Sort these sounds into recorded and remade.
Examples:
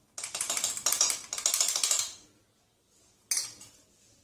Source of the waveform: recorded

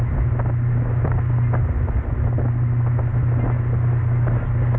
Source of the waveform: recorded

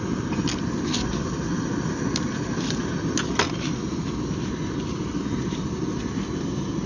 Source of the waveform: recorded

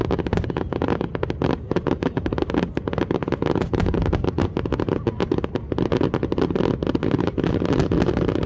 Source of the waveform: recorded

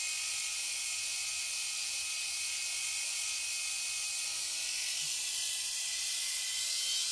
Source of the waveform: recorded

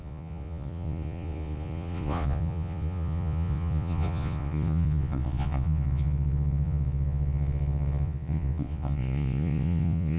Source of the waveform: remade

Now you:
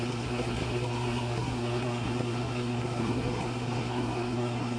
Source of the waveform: remade